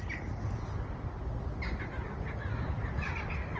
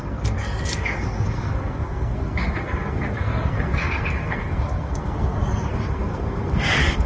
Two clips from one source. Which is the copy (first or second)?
second